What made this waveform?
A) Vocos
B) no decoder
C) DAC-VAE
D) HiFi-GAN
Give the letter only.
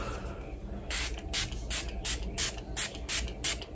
B